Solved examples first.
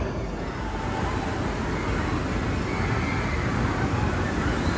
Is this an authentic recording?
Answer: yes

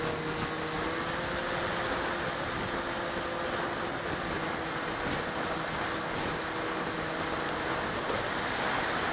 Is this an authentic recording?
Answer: yes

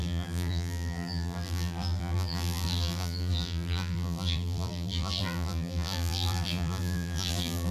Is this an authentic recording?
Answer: no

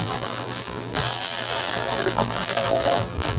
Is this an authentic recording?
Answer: no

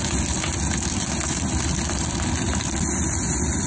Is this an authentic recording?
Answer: no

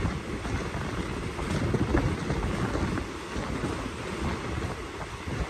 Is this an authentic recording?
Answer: yes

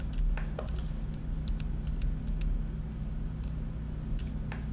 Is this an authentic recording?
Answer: yes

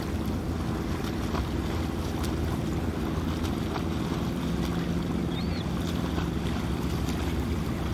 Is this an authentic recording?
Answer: yes